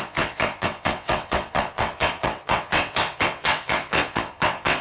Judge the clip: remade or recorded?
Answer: remade